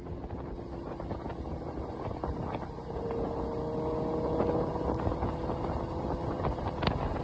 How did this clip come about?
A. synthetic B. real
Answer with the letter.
B